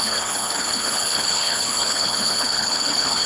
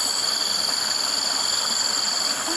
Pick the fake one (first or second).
first